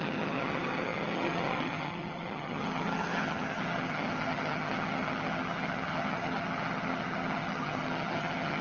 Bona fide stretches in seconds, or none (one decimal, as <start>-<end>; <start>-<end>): none